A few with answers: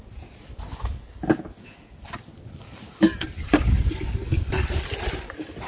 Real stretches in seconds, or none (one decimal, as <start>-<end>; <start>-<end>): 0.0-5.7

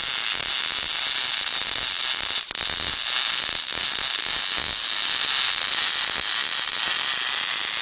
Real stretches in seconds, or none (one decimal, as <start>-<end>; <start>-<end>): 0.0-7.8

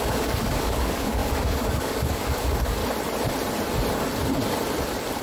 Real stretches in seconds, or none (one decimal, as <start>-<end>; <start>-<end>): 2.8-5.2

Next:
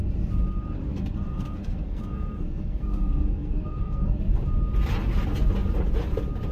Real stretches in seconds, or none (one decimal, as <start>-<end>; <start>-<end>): 0.0-0.9; 4.2-6.5